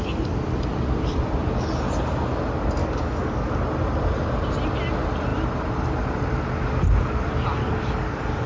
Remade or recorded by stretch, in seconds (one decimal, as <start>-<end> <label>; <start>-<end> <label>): 0.0-2.8 recorded; 2.8-3.5 remade; 3.5-7.6 recorded; 7.6-8.5 remade